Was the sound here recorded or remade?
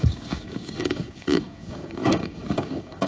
remade